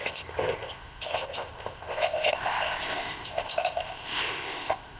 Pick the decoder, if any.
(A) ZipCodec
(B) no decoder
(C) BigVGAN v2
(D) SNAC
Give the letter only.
A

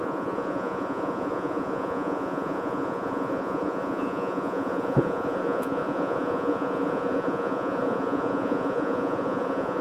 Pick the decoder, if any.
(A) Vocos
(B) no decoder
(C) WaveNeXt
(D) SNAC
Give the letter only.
A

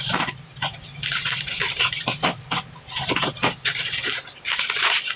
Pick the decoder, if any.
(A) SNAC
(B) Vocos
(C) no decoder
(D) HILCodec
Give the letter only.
C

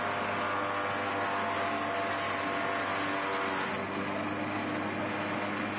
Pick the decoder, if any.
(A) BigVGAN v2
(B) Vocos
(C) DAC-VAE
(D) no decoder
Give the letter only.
D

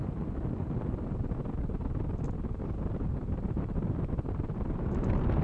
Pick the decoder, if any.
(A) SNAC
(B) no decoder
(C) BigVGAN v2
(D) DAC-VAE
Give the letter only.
B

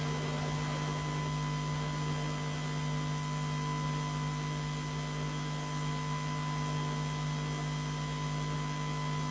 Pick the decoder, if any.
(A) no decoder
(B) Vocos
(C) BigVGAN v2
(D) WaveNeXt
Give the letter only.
A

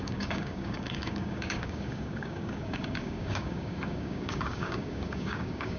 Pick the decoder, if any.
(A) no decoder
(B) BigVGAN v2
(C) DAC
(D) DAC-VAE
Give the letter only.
C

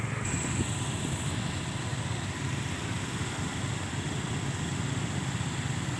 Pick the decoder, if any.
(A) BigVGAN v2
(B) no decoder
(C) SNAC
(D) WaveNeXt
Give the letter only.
B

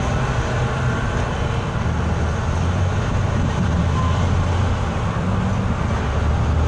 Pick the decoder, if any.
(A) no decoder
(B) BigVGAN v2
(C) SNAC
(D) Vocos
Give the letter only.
A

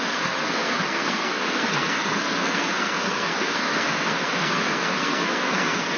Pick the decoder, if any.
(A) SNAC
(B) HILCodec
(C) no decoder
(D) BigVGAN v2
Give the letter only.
A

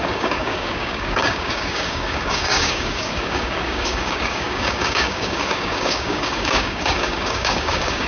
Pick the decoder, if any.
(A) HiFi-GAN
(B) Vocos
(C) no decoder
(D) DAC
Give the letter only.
D